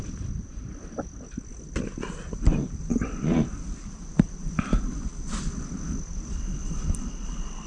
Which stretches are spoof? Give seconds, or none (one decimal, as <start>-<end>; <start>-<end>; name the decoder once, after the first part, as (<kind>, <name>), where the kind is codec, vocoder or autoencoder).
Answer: none